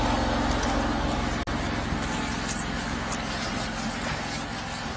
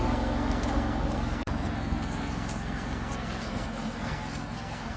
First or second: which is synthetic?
second